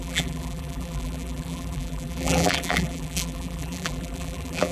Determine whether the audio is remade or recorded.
remade